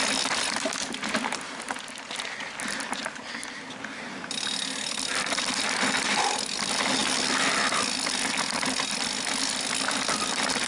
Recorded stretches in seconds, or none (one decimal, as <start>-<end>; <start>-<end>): 0.0-10.7